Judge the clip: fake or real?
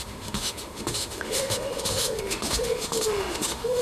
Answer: fake